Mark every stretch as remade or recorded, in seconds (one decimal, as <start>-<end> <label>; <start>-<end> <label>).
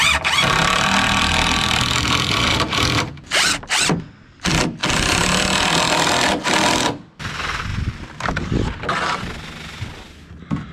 0.0-7.7 recorded; 7.7-8.3 remade; 8.3-10.7 recorded